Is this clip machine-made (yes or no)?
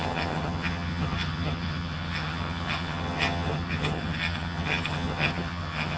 yes